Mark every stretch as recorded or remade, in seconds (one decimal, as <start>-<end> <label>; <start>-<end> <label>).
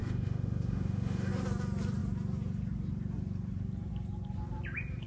0.0-1.3 remade; 1.3-5.1 recorded